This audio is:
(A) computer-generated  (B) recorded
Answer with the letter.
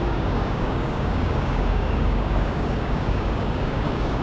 A